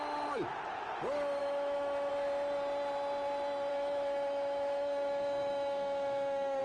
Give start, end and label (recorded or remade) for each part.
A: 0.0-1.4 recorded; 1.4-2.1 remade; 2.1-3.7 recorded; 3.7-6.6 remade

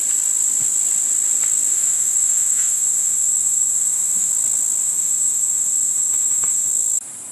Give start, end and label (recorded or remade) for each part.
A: 0.0-1.7 recorded; 1.7-4.3 remade; 4.3-4.8 recorded; 4.8-6.7 remade; 6.7-7.3 recorded